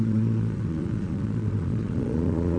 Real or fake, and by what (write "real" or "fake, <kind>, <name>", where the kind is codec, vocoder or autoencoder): fake, vocoder, Vocos